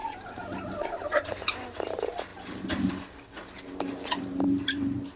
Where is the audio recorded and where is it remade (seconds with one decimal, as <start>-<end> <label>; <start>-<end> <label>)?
0.0-1.5 remade; 1.5-2.3 recorded; 2.3-2.9 remade; 2.9-3.9 recorded; 3.9-5.2 remade